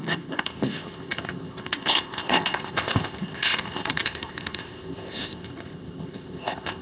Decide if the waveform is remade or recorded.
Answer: remade